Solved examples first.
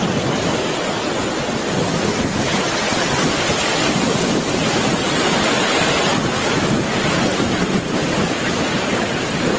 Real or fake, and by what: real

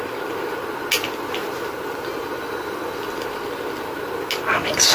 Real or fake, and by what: real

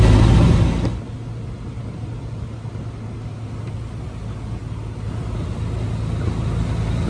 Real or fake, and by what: real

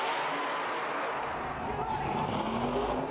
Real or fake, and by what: real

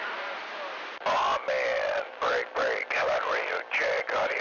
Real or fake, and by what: real